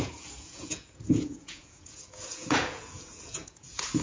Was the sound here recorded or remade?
remade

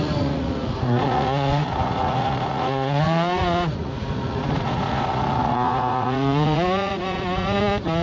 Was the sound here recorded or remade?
remade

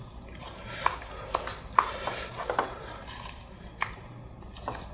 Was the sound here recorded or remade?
remade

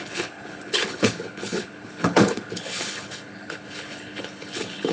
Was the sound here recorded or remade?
remade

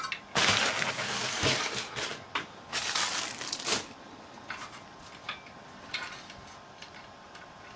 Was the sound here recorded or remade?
recorded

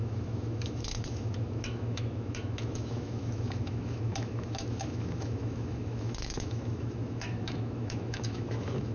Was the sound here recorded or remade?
remade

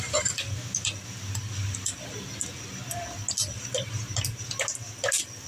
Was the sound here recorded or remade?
recorded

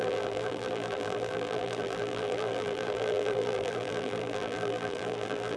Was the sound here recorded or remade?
remade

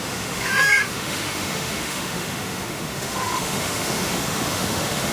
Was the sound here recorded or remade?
remade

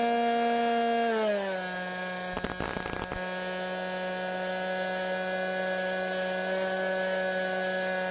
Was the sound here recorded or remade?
recorded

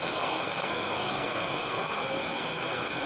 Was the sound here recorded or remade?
remade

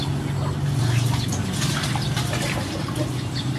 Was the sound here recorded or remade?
recorded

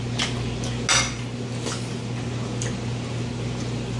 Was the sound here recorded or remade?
recorded